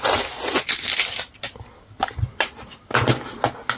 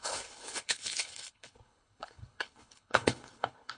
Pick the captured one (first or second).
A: first